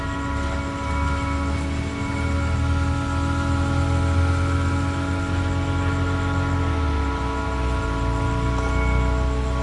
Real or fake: real